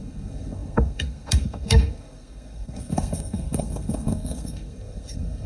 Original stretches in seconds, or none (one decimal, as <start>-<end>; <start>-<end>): none